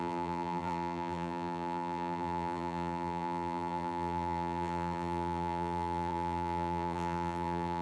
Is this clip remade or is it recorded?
remade